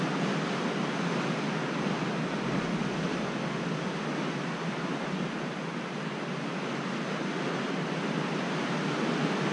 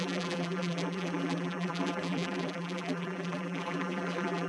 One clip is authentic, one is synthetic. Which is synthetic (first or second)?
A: second